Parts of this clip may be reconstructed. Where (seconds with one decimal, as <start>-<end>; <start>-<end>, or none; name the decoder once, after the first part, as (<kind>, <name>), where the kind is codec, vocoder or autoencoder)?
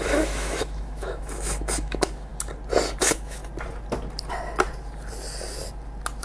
0.0-2.3 (autoencoder, DAC-VAE); 3.0-3.4